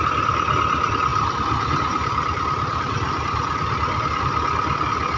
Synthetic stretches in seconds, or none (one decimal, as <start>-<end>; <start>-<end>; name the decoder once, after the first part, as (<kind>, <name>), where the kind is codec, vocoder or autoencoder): none